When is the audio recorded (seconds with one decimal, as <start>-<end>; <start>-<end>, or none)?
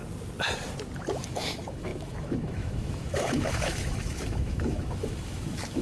0.0-1.2